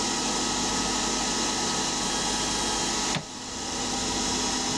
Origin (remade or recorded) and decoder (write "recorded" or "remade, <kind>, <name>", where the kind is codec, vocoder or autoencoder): recorded